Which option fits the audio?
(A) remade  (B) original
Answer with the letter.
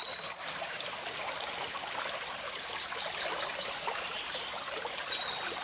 B